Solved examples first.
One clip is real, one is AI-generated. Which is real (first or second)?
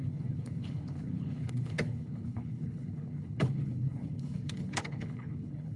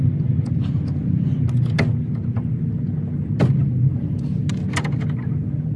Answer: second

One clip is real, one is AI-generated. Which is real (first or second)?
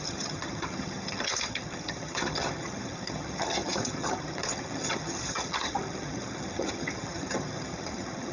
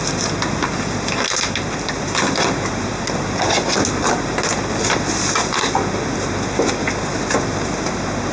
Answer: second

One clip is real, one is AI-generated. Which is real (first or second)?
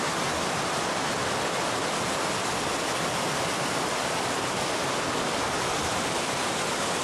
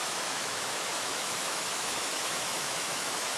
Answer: first